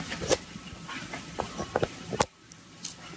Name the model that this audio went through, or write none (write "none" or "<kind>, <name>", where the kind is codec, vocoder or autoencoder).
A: vocoder, BigVGAN v2